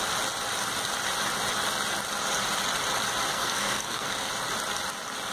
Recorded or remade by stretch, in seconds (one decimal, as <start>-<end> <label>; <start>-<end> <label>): 0.0-3.3 recorded; 3.3-4.3 remade; 4.3-5.3 recorded